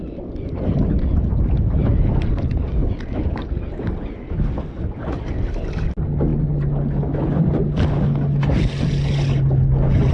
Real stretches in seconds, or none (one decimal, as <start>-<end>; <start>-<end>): 0.0-10.1